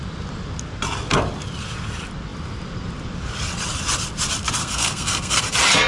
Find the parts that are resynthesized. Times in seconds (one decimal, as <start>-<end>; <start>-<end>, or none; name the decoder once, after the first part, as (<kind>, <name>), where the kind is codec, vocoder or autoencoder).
4.6-5.4 (codec, SNAC)